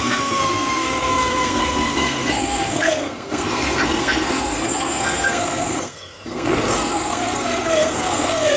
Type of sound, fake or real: fake